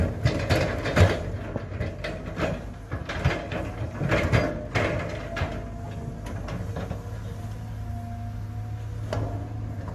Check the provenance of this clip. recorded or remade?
recorded